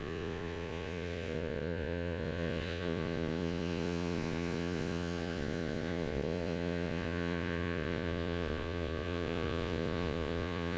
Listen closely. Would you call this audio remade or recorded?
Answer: remade